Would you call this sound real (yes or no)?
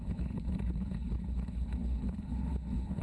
no